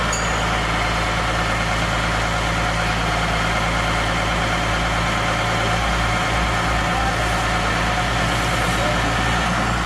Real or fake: real